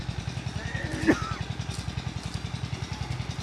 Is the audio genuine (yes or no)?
yes